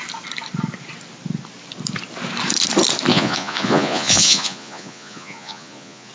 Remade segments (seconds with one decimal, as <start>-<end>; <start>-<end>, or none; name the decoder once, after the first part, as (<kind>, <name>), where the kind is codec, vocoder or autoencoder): 3.1-6.1 (vocoder, Vocos)